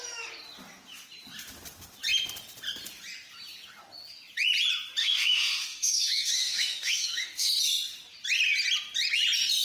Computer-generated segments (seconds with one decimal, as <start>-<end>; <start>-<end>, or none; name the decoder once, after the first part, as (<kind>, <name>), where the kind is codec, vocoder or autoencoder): 5.0-7.5 (autoencoder, DAC-VAE)